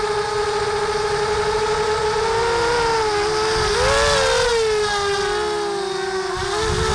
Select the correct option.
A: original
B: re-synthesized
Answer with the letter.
A